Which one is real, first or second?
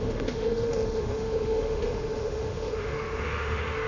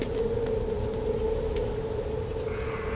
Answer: second